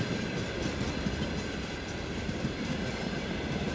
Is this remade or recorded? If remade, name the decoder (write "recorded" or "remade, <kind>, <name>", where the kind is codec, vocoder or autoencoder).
recorded